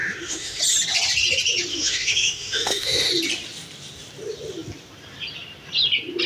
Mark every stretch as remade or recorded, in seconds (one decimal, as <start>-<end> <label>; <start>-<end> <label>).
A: 0.0-0.6 remade; 0.6-1.7 recorded; 1.7-3.1 remade; 3.1-6.3 recorded